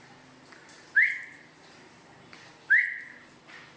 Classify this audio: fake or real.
real